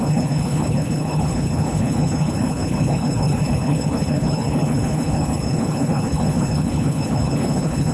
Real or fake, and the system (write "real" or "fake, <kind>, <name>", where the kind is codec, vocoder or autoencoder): fake, codec, HILCodec